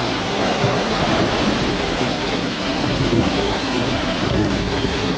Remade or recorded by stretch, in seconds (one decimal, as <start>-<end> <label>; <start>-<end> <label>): 0.0-1.0 remade; 1.0-1.7 recorded; 1.7-5.2 remade